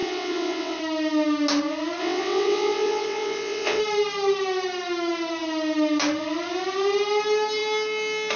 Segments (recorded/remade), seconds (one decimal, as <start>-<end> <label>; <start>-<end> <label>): 0.0-0.8 remade; 0.8-2.0 recorded; 2.0-3.8 remade; 3.8-8.4 recorded